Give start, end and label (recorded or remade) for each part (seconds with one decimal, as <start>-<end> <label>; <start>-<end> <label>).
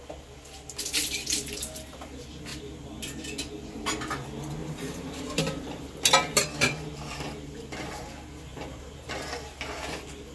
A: 0.0-4.6 recorded; 4.6-6.4 remade; 6.4-8.5 recorded; 8.5-9.1 remade; 9.1-10.3 recorded